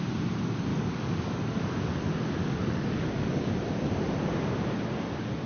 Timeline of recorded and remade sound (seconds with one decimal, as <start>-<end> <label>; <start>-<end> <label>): 0.0-0.7 recorded; 0.7-1.6 remade; 1.6-2.4 recorded; 2.4-3.5 remade; 3.5-5.5 recorded